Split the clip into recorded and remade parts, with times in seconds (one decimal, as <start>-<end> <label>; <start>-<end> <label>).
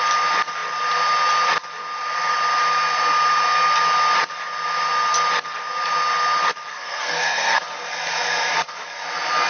0.0-6.7 recorded; 6.7-7.6 remade; 7.6-9.5 recorded